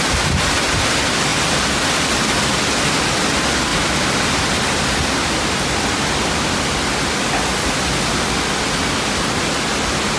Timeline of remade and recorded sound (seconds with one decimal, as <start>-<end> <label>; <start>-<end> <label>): 0.0-10.2 recorded